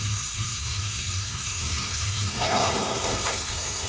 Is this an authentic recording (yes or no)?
no